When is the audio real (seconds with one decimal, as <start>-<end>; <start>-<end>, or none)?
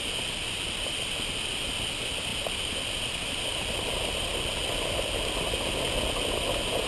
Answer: 0.0-6.9